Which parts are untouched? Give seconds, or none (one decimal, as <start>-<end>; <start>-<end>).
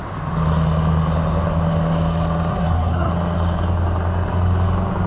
0.0-2.5; 3.1-5.1